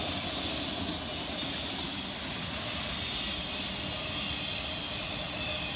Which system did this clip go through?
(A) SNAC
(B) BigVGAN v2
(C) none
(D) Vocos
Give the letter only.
C